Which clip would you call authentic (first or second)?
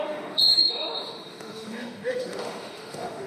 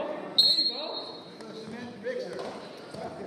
second